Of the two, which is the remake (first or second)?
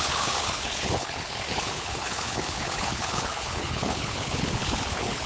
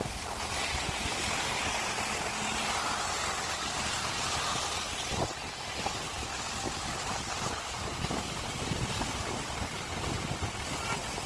first